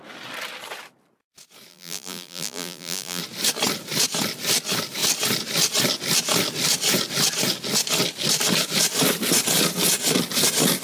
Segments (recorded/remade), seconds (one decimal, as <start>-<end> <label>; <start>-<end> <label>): 0.0-1.7 recorded; 1.7-3.2 remade; 3.2-10.8 recorded